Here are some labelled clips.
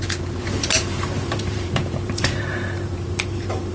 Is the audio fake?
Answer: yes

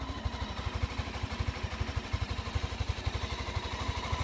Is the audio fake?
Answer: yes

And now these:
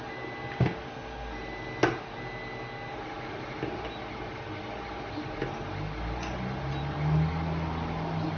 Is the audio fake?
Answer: no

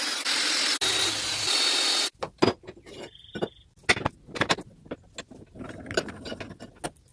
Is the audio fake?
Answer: no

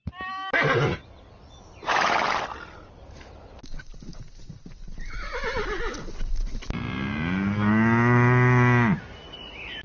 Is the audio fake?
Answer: no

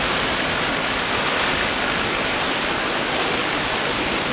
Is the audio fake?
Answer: no